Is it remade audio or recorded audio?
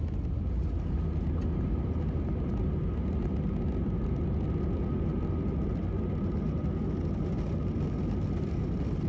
recorded